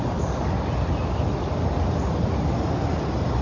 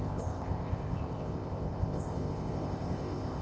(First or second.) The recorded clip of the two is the first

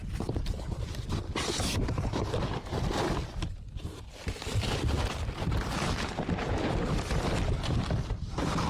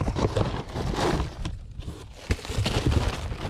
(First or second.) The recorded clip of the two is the second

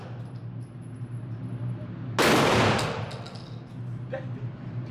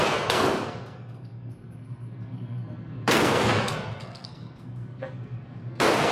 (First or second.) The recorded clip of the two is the first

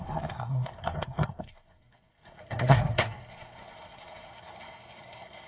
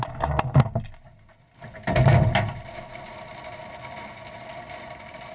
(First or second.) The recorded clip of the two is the second